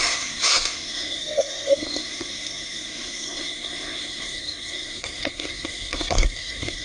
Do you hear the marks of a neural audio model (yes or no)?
yes